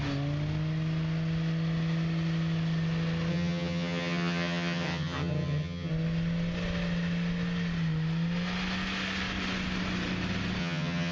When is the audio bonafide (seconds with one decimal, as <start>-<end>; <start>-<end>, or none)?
0.0-3.3; 5.9-10.6